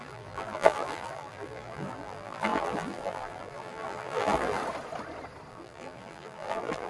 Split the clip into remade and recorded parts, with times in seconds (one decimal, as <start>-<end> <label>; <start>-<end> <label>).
0.0-4.6 remade; 4.6-5.5 recorded; 5.5-6.9 remade

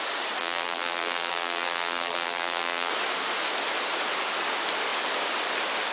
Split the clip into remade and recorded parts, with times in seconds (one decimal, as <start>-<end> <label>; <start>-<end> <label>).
0.0-0.4 recorded; 0.4-2.9 remade; 2.9-5.9 recorded

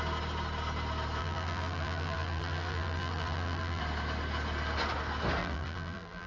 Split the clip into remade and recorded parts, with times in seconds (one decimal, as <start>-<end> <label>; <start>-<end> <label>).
0.0-1.2 recorded; 1.2-3.8 remade; 3.8-5.4 recorded; 5.4-6.3 remade

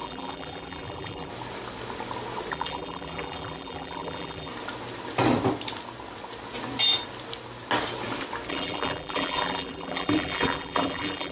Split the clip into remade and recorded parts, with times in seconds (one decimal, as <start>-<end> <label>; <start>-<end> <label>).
0.0-1.3 remade; 1.3-2.5 recorded; 2.5-4.5 remade; 4.5-8.5 recorded; 8.5-11.3 remade